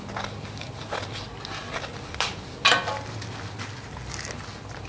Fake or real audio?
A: real